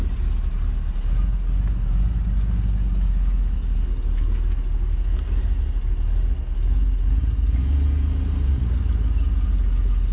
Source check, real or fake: real